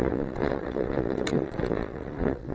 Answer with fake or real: fake